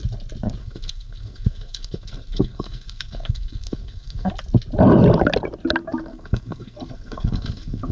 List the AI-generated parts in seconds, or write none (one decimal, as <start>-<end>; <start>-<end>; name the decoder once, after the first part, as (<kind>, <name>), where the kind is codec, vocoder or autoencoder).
0.6-4.3 (codec, SNAC); 6.1-7.9